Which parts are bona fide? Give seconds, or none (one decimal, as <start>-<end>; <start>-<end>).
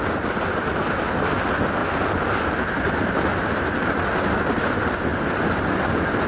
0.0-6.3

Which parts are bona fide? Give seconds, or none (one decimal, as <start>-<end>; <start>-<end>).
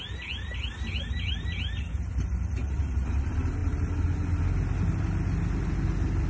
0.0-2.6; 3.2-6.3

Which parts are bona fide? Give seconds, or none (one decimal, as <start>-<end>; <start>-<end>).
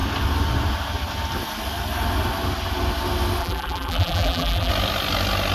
0.0-3.4; 4.7-5.5